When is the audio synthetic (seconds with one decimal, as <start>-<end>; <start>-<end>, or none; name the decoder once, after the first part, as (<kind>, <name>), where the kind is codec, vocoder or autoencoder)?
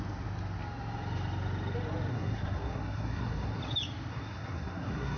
2.1-3.6 (codec, SNAC); 4.1-5.2